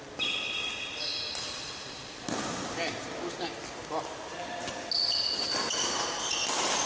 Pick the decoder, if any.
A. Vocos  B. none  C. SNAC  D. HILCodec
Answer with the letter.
B